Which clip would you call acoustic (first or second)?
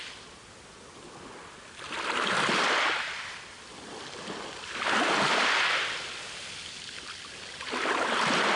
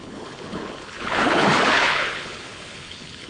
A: first